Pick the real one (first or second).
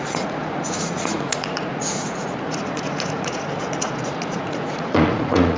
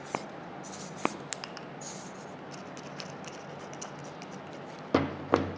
second